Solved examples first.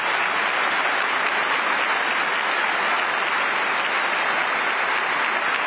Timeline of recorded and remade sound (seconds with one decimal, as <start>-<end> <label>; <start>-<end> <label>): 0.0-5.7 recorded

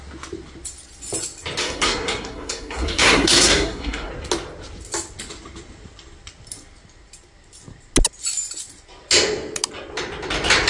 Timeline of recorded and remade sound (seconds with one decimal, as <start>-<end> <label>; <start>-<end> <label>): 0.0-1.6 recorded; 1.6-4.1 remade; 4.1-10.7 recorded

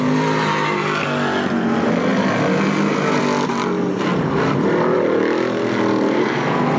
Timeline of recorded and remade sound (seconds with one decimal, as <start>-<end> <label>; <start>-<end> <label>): 0.0-6.8 recorded